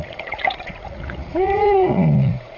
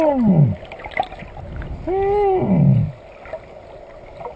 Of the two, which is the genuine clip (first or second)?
second